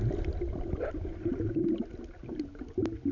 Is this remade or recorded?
recorded